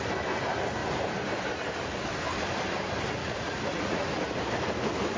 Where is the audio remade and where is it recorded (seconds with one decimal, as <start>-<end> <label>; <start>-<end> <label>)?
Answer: 0.0-3.2 recorded; 3.2-4.2 remade; 4.2-5.2 recorded

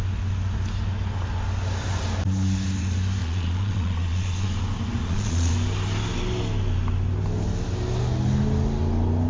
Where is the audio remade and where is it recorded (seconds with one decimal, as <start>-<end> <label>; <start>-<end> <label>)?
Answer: 0.0-3.2 recorded; 3.2-4.5 remade; 4.5-5.0 recorded; 5.0-5.5 remade; 5.5-9.3 recorded